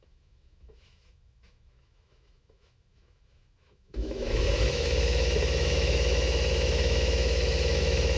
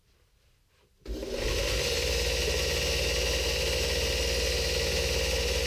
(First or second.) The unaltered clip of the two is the second